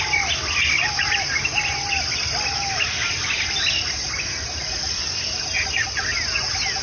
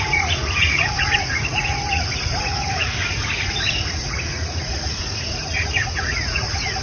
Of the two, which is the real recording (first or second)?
first